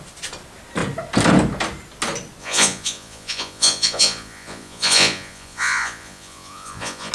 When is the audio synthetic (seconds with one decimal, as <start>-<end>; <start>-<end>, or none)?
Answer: 2.4-7.1